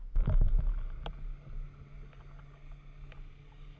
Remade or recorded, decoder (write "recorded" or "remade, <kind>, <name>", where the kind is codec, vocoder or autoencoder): recorded